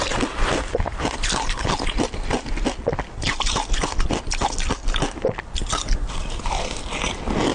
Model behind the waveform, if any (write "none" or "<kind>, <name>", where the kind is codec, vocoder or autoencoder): none